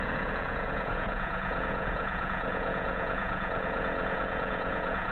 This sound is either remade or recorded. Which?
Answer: remade